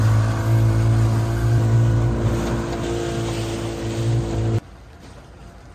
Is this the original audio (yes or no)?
yes